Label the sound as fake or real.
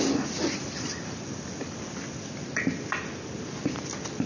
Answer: real